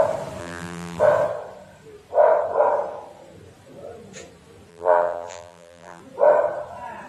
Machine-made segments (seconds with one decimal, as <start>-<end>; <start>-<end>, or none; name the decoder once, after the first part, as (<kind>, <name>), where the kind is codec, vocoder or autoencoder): 0.4-1.0 (vocoder, BigVGAN v2); 4.7-6.0